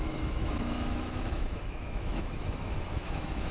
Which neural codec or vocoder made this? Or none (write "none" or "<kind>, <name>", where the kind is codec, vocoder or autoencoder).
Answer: autoencoder, DAC-VAE